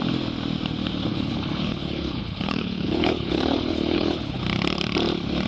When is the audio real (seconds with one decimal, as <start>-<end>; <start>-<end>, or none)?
0.0-1.1; 4.4-5.5